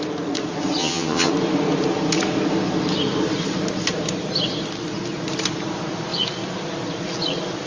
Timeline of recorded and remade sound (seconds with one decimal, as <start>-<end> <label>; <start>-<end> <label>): 0.0-0.8 recorded; 0.8-1.3 remade; 1.3-7.7 recorded